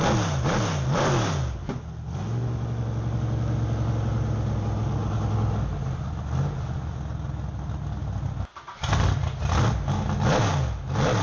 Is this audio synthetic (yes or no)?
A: no